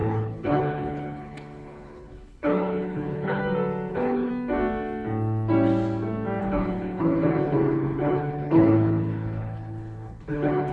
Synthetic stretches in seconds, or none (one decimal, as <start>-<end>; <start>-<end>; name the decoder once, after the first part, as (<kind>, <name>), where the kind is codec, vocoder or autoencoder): 0.0-3.4 (codec, HILCodec); 3.9-4.3; 6.4-10.7